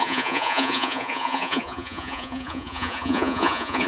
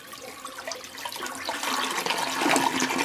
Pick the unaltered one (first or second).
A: second